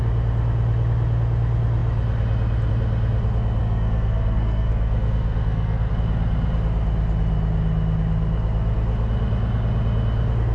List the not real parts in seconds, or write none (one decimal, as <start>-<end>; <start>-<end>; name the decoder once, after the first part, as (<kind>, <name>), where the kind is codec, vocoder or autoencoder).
3.6-5.9 (codec, SNAC)